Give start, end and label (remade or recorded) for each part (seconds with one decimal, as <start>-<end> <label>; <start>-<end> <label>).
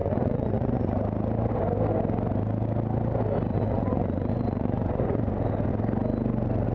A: 0.0-1.0 remade; 1.0-3.5 recorded; 3.5-5.3 remade; 5.3-6.7 recorded